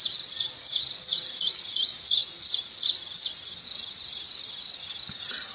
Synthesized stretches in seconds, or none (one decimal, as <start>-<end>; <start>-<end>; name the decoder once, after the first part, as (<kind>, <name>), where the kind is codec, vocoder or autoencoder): 0.0-1.4 (vocoder, BigVGAN v2)

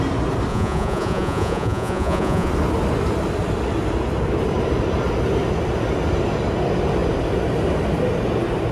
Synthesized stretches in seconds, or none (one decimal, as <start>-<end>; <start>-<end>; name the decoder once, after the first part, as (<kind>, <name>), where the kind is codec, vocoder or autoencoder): 0.5-2.5 (vocoder, Vocos)

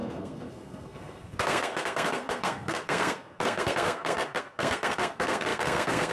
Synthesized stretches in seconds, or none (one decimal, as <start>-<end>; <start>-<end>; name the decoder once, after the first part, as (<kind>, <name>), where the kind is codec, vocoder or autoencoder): 0.0-6.1 (codec, SNAC)

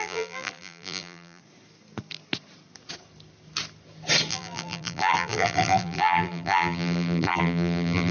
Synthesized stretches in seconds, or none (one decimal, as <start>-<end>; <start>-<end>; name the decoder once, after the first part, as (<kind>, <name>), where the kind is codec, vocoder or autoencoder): 0.0-1.4 (vocoder, BigVGAN v2); 4.3-8.1

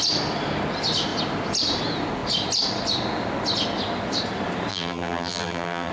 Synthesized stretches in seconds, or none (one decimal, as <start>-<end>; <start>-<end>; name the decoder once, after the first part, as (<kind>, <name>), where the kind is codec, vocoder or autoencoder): 4.7-5.9 (vocoder, BigVGAN v2)

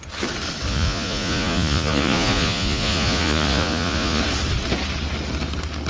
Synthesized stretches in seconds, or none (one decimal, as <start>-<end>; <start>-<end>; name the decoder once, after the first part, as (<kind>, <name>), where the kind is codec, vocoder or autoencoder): 0.7-4.2 (vocoder, Vocos)

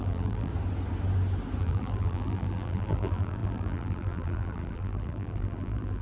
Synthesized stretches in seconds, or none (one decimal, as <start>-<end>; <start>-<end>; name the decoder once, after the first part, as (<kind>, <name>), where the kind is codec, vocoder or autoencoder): 0.0-0.5 (vocoder, BigVGAN v2); 1.6-6.0